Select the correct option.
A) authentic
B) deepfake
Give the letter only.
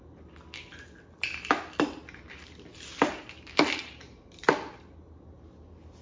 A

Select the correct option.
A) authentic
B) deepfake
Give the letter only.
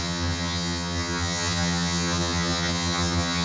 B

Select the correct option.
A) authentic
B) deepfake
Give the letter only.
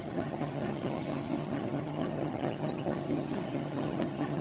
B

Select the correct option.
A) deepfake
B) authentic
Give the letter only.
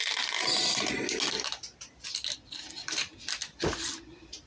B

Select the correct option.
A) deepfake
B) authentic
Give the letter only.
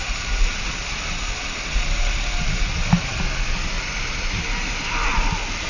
B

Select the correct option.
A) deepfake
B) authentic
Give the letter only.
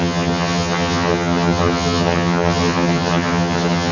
A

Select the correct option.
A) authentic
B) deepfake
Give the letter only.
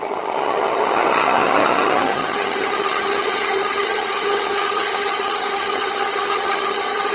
B